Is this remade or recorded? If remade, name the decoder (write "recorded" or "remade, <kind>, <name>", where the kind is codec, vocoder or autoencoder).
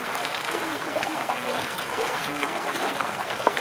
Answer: remade, codec, SNAC